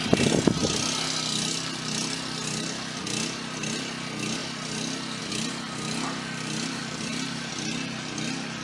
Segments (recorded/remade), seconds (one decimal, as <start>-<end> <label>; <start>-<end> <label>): 0.0-6.8 recorded; 6.8-7.5 remade; 7.5-8.6 recorded